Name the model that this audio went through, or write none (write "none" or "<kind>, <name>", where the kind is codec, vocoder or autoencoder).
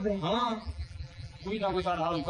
vocoder, BigVGAN v2